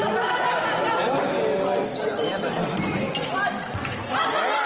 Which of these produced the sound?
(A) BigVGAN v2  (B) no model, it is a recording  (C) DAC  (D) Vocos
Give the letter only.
B